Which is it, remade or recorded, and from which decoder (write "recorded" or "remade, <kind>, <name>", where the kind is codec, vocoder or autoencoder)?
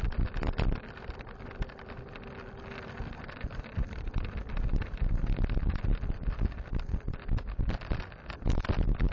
remade, vocoder, BigVGAN v2